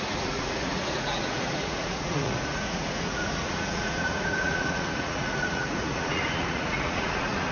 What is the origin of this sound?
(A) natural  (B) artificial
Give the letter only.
B